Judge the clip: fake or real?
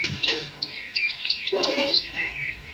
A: fake